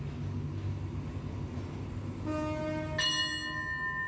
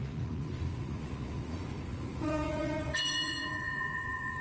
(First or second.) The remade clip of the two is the second